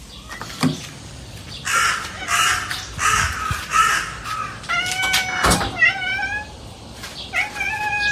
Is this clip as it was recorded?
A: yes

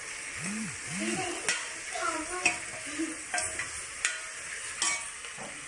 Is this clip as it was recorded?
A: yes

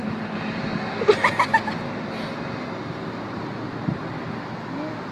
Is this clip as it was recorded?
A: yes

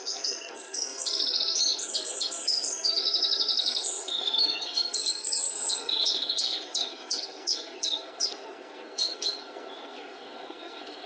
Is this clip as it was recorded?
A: no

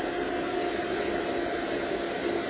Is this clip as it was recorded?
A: yes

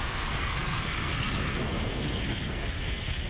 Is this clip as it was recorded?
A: no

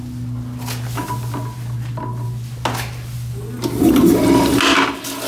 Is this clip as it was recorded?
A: yes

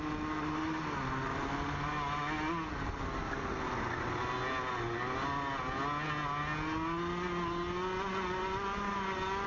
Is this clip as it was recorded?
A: yes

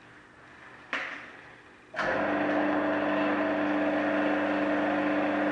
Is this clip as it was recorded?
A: yes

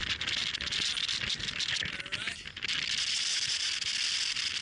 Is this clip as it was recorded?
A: yes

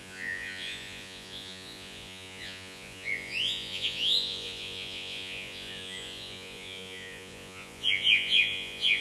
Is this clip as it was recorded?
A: no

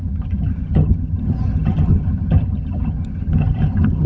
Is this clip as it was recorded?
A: no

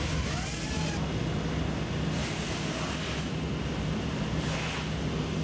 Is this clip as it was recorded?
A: yes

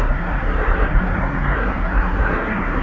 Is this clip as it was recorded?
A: no